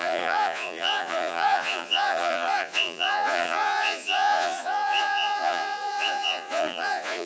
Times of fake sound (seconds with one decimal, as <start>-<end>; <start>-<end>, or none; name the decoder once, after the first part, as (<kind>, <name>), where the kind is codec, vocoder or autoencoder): 0.0-7.3 (vocoder, Vocos)